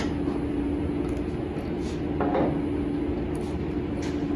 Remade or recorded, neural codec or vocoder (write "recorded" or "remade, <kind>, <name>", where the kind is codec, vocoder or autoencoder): recorded